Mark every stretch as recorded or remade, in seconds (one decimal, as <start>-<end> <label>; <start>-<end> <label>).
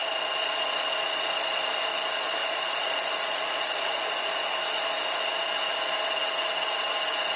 0.0-2.4 recorded; 2.4-4.3 remade; 4.3-7.4 recorded